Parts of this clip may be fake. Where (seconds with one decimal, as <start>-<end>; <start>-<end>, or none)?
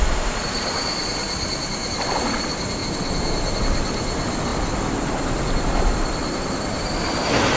none